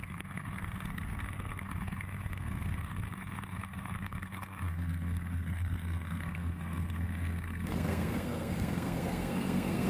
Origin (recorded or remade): remade